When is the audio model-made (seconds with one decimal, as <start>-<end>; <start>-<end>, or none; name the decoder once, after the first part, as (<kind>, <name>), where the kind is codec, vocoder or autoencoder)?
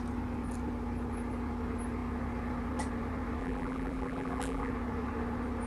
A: 3.4-4.7 (vocoder, BigVGAN v2)